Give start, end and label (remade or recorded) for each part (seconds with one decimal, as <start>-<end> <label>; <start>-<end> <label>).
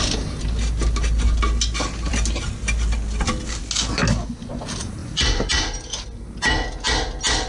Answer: 0.0-5.0 recorded; 5.0-5.5 remade; 5.5-7.5 recorded